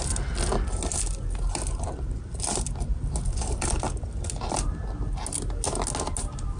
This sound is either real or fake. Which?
real